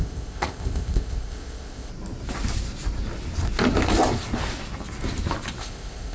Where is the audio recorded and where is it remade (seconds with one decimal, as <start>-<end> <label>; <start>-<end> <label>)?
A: 0.0-1.9 remade; 1.9-5.6 recorded; 5.6-6.1 remade